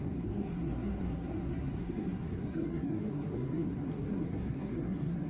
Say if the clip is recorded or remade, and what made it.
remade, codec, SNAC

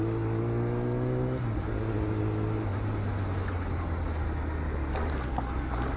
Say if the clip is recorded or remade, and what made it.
recorded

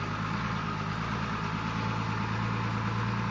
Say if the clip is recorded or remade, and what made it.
recorded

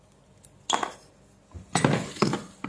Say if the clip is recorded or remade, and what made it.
recorded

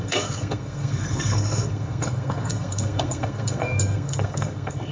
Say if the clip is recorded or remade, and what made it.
remade, codec, SNAC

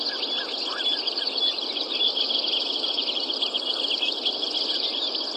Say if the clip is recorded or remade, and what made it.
recorded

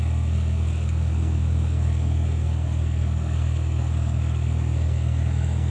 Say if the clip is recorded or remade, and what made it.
remade, codec, SNAC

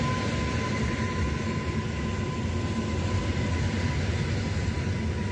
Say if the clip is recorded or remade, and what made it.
recorded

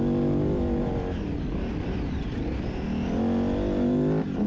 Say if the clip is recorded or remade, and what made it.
recorded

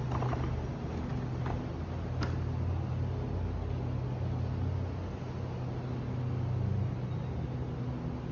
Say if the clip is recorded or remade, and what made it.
recorded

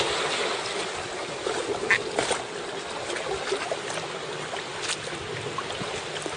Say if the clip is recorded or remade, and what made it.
recorded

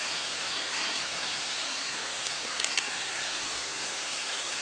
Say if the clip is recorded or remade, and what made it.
remade, codec, SNAC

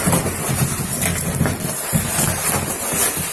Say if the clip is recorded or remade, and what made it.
recorded